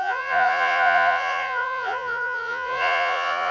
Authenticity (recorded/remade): remade